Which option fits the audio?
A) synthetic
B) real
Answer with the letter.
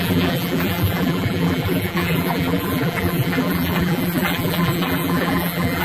A